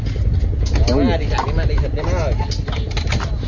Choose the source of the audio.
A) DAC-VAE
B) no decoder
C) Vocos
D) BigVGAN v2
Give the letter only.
B